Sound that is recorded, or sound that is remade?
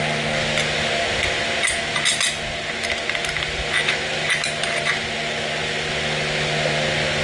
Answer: recorded